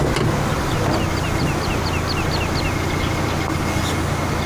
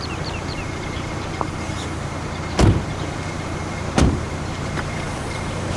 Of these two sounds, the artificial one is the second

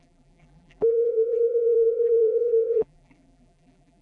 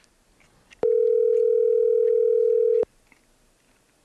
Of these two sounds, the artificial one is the first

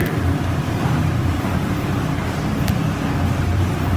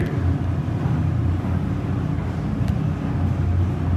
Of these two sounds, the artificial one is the first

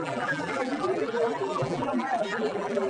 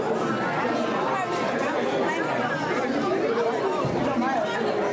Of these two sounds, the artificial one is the first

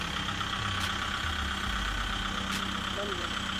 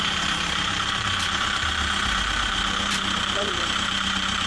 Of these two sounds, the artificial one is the second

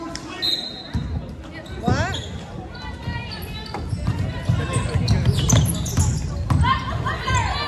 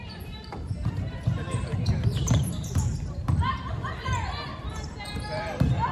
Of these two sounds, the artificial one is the second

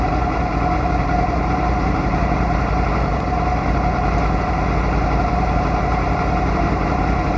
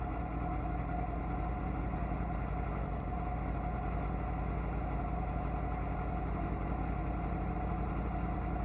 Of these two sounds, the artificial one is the first